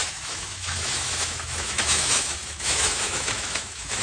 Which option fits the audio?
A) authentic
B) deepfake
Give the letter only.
B